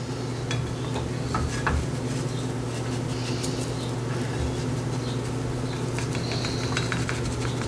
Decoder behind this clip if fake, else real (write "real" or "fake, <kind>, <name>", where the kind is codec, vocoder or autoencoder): real